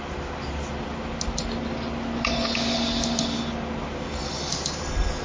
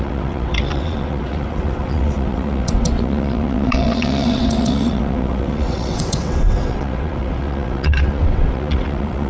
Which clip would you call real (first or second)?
first